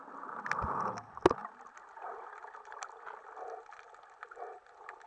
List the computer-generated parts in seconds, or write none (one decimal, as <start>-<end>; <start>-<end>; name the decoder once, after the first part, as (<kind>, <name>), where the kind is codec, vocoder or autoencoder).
none